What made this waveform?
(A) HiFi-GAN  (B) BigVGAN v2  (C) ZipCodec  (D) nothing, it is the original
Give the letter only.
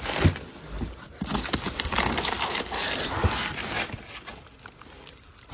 D